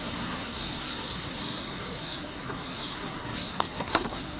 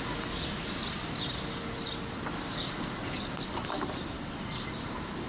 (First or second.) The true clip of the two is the second